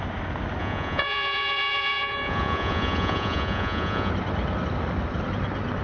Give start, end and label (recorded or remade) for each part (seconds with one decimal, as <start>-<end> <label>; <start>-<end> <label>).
0.0-0.6 recorded; 0.6-4.1 remade; 4.1-5.8 recorded